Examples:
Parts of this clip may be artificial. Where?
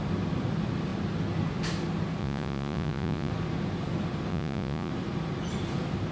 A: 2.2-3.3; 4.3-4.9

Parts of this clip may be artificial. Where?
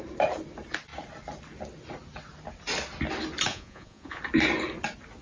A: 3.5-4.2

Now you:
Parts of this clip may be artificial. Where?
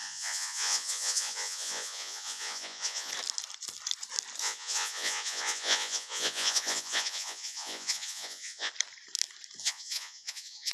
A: 0.0-3.1; 4.4-8.7; 9.6-10.7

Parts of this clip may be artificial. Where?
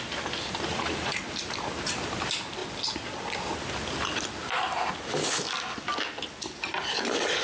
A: 0.7-1.2